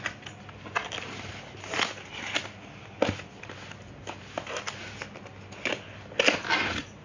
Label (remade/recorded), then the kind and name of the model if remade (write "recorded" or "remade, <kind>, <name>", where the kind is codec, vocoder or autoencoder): recorded